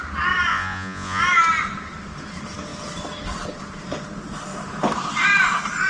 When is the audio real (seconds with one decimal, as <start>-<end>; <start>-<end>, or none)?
0.0-0.5; 1.2-5.9